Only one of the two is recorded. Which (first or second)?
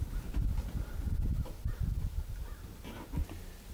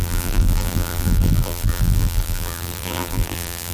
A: first